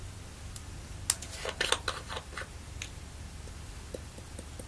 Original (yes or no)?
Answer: yes